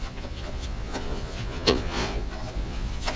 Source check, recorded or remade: remade